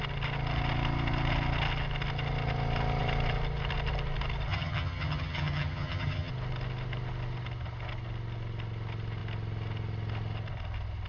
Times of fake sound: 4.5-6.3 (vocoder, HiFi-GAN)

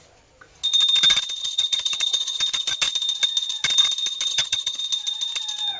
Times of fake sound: 1.4-2.4 (vocoder, HiFi-GAN); 4.3-4.8

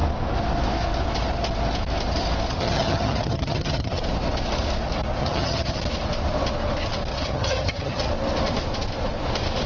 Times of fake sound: 2.5-4.0 (vocoder, HiFi-GAN); 5.2-5.8; 7.1-8.1

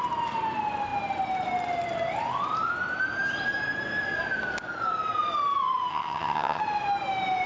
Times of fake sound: 5.9-6.6 (vocoder, HiFi-GAN)

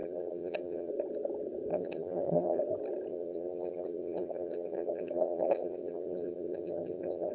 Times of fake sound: 0.0-0.9 (vocoder, HiFi-GAN); 1.7-2.6; 3.1-7.3

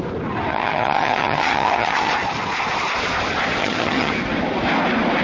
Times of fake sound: 0.5-2.1 (vocoder, HiFi-GAN); 3.6-4.1

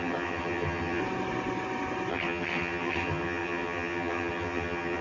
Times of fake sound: 0.0-1.0 (vocoder, HiFi-GAN); 2.1-5.0